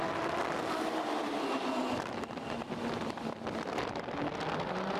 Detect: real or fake real